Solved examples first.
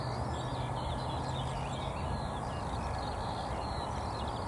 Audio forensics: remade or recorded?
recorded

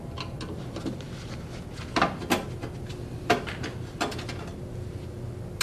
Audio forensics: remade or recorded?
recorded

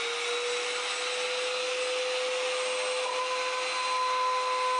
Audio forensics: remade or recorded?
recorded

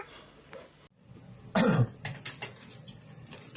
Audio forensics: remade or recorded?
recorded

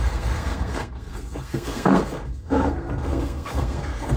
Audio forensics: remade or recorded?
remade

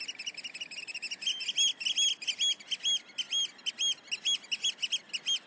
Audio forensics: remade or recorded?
recorded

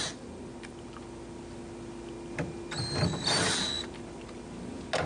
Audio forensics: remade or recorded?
recorded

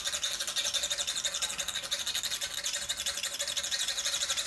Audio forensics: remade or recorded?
recorded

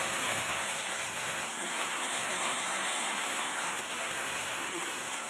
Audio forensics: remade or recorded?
remade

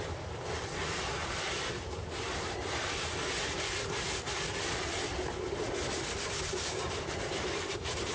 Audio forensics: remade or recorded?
recorded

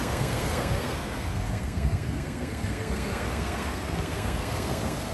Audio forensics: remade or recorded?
remade